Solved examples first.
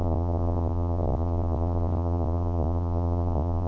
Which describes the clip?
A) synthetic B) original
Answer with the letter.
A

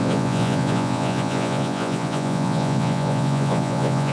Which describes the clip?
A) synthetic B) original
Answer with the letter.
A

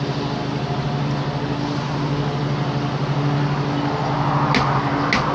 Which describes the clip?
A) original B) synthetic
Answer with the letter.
A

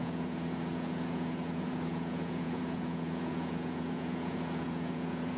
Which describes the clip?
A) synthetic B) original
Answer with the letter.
A